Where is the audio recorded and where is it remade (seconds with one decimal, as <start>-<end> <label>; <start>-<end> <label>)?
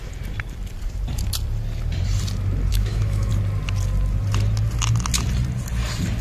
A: 0.0-2.7 recorded; 2.7-3.3 remade; 3.3-6.2 recorded